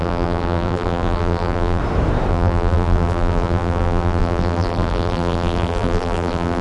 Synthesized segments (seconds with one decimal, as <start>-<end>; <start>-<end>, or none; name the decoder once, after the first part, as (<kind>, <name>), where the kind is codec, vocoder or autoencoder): 0.0-1.8 (vocoder, BigVGAN v2); 2.3-6.6